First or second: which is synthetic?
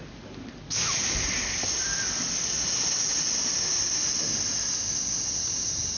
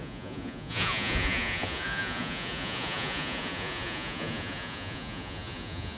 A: second